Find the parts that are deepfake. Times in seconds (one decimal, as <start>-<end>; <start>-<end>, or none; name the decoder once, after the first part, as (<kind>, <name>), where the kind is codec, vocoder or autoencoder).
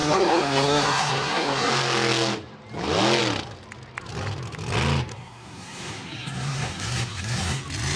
0.0-1.7 (codec, SNAC); 5.1-7.6